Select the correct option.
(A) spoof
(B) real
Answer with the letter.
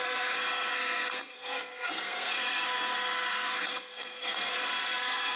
A